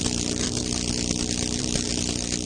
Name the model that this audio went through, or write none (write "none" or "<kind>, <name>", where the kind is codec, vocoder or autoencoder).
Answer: none